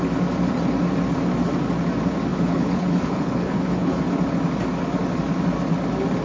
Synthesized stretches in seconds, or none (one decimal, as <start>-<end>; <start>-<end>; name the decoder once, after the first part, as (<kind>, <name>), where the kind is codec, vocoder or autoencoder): 2.3-4.0 (codec, HILCodec)